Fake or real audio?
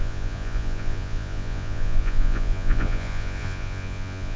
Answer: fake